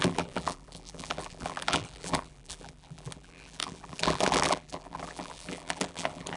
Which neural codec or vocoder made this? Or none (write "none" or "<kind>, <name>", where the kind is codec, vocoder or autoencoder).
vocoder, BigVGAN v2